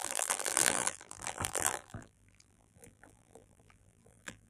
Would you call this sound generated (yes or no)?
yes